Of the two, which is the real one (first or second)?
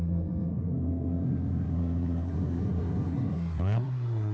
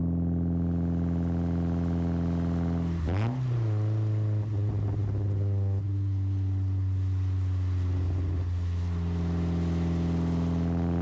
second